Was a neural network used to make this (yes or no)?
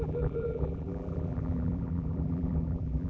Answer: yes